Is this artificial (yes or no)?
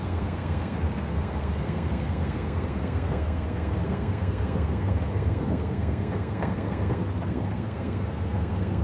yes